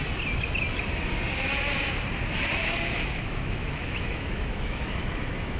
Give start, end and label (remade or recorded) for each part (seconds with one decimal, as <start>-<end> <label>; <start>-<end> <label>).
0.0-2.6 recorded; 2.6-5.6 remade